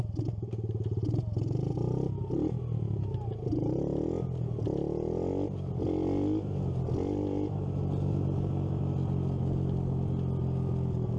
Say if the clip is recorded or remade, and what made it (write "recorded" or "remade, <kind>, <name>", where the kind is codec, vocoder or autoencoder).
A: recorded